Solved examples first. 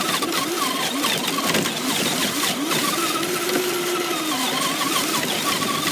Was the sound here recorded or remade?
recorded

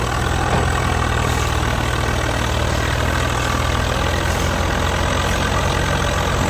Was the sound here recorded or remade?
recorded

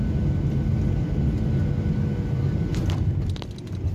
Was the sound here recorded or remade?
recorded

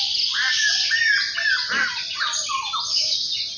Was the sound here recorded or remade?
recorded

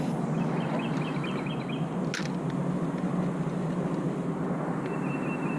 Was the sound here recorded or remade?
recorded